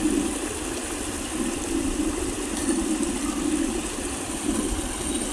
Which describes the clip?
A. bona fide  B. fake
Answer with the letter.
A